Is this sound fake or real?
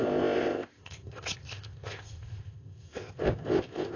fake